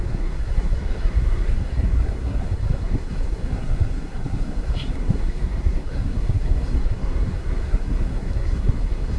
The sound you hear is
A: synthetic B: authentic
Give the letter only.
A